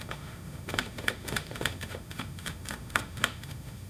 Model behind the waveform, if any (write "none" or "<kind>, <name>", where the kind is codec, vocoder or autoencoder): autoencoder, DAC-VAE